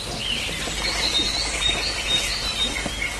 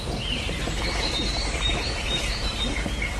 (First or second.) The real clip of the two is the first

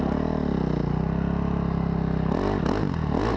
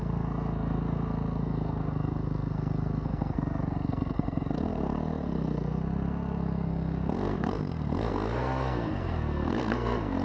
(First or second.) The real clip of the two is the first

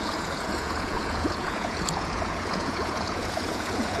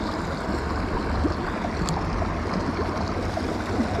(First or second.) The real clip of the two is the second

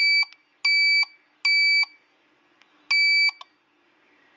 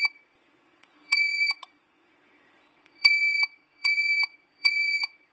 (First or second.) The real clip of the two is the first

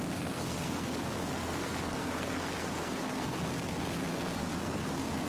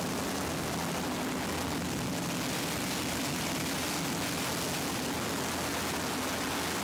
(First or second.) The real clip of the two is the second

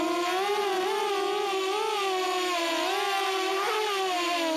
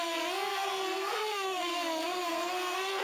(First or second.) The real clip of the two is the first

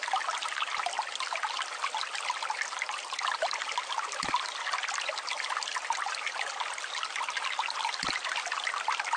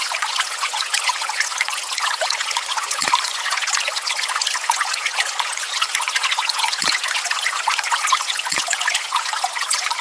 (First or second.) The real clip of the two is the first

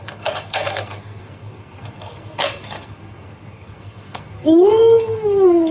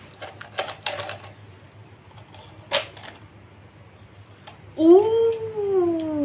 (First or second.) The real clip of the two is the second